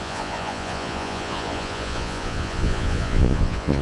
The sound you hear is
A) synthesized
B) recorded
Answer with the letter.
A